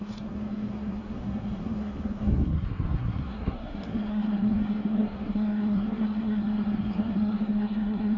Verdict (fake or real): fake